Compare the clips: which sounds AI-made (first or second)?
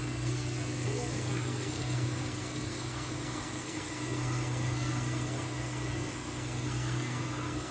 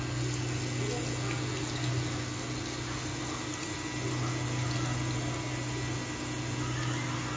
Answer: first